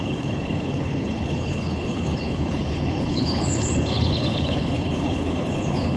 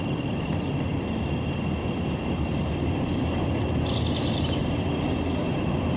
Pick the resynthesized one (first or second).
first